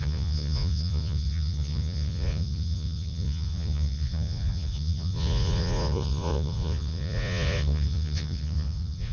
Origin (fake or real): fake